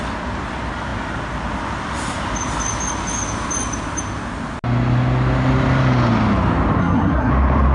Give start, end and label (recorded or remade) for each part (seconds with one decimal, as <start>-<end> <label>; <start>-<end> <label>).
0.0-6.8 recorded; 6.8-7.3 remade; 7.3-7.7 recorded